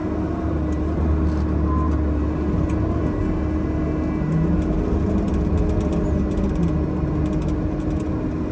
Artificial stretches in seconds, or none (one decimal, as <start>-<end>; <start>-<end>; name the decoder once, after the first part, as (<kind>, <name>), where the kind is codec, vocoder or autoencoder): none